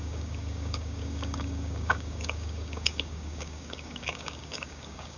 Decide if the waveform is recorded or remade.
remade